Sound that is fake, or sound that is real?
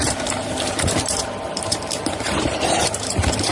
fake